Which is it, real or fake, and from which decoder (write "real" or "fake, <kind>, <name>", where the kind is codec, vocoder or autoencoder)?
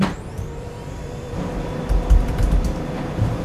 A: fake, vocoder, BigVGAN v2